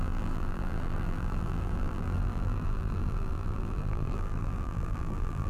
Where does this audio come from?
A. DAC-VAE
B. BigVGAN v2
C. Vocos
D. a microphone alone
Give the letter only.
B